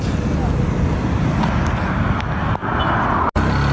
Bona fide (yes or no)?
yes